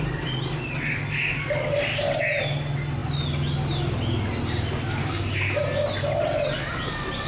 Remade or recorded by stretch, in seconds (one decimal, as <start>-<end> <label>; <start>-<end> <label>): 0.0-5.0 recorded; 5.0-5.6 remade; 5.6-7.3 recorded